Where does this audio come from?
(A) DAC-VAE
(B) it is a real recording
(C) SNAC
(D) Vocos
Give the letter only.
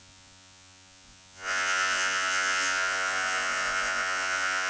D